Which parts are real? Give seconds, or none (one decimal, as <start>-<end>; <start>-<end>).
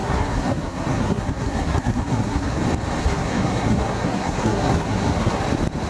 2.6-3.0; 5.4-5.9